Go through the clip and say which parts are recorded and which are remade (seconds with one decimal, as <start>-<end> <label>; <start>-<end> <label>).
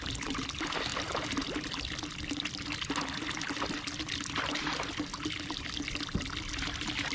0.0-7.1 recorded